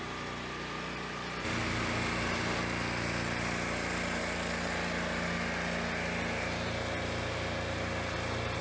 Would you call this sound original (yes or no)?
yes